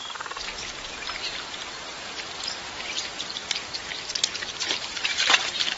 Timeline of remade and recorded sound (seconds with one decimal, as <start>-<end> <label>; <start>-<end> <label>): 0.0-0.5 remade; 0.5-1.2 recorded; 1.2-5.8 remade

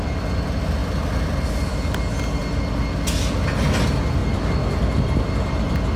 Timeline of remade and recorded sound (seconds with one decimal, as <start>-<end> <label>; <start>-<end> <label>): 0.0-4.2 recorded; 4.2-5.4 remade; 5.4-6.0 recorded

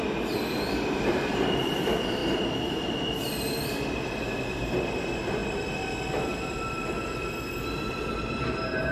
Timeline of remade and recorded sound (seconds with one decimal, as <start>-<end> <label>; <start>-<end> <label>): 0.0-5.4 remade; 5.4-8.5 recorded; 8.5-8.9 remade

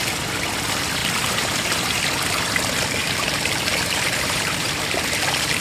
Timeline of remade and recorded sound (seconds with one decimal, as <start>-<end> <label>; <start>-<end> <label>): 0.0-1.0 recorded; 1.0-2.0 remade; 2.0-3.0 recorded; 3.0-5.6 remade

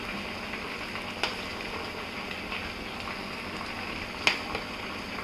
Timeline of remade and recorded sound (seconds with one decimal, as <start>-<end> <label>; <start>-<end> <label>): 0.0-5.2 recorded

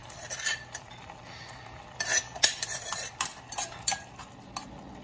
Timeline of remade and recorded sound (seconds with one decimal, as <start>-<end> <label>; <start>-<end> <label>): 0.0-3.3 remade; 3.3-5.0 recorded